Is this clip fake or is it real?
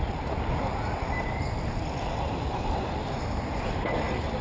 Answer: real